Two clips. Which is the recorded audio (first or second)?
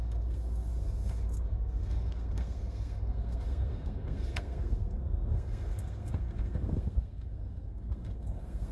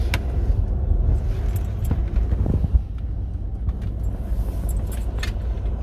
second